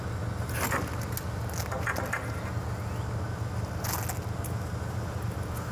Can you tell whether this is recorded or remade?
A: recorded